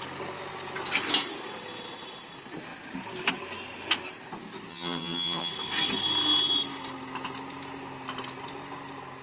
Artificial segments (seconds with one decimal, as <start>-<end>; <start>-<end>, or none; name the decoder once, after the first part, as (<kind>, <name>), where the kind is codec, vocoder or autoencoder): 4.7-5.5 (vocoder, HiFi-GAN)